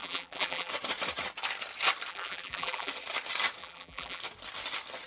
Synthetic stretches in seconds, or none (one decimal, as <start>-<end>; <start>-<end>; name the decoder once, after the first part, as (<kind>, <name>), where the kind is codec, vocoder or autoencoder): 0.0-0.7 (vocoder, BigVGAN v2); 2.1-2.9; 3.6-4.2

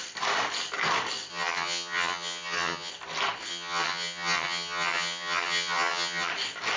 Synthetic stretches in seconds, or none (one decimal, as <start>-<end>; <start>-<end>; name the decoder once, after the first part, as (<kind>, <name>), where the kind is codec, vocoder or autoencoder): 1.3-2.9 (vocoder, HiFi-GAN); 3.5-6.3

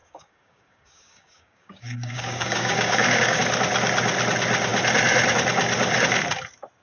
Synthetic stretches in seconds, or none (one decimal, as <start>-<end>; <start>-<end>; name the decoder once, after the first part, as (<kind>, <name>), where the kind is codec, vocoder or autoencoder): 0.0-3.4 (codec, DAC)

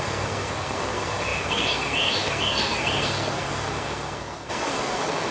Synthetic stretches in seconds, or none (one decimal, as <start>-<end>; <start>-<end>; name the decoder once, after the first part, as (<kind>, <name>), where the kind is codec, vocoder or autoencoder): 0.0-5.3 (codec, SNAC)

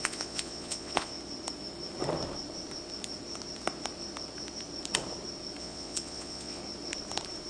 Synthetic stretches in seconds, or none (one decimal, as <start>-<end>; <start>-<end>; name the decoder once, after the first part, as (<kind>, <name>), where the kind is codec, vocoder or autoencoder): 0.0-1.1 (vocoder, Vocos); 5.6-6.6

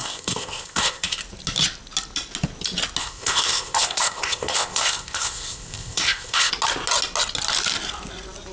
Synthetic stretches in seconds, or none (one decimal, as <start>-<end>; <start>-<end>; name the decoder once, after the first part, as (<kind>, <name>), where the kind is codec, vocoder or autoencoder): 0.0-1.2 (codec, ZipCodec); 3.0-6.5

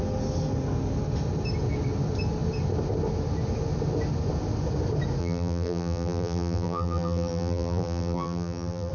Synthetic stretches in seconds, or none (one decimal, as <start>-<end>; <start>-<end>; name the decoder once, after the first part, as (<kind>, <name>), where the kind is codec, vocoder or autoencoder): 5.2-8.9 (vocoder, BigVGAN v2)

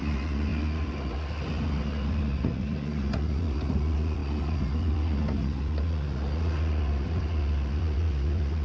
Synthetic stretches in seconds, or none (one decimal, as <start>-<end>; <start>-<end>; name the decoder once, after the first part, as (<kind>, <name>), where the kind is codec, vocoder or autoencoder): 0.0-8.6 (vocoder, Vocos)